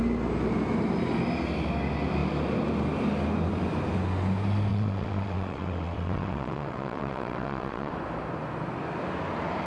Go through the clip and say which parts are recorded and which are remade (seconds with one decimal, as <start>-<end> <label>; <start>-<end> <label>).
0.0-4.7 recorded; 4.7-7.9 remade; 7.9-9.7 recorded